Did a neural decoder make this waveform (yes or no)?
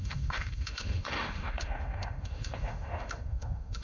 yes